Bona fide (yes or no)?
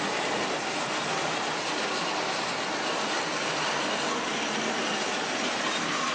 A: yes